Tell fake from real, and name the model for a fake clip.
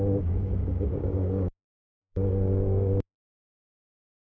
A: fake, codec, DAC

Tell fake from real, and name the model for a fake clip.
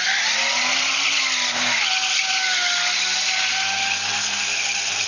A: real